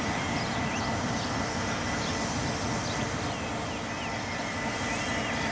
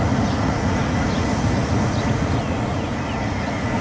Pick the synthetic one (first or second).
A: second